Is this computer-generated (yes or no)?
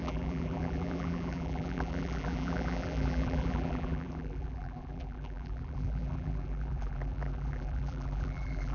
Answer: yes